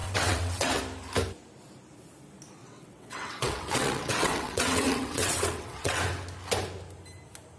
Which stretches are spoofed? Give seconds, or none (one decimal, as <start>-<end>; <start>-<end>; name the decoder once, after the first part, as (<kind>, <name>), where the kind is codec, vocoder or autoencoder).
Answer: 0.0-0.8 (vocoder, WaveNeXt); 2.6-6.0